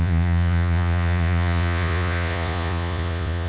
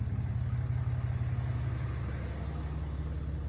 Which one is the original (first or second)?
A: second